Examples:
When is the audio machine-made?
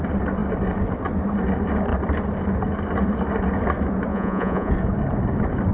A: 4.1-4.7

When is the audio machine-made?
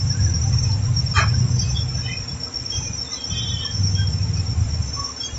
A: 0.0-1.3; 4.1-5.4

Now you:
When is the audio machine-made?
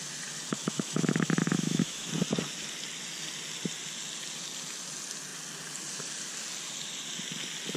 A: 0.6-2.1